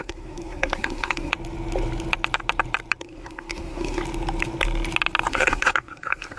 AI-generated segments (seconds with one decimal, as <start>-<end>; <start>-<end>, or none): 0.0-1.3; 3.0-4.0; 5.3-6.4